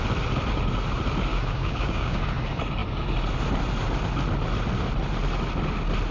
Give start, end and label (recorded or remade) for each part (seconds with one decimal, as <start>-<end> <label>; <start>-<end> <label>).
0.0-1.3 recorded; 1.3-2.2 remade; 2.2-6.1 recorded